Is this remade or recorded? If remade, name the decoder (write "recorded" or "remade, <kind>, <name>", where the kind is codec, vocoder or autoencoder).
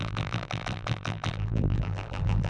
remade, vocoder, BigVGAN v2